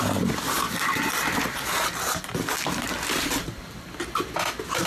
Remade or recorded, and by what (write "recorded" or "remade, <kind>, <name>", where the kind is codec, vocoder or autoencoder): recorded